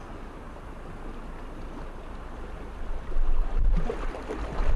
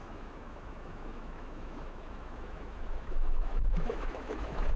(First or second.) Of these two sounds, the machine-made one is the second